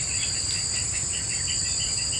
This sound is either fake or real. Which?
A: real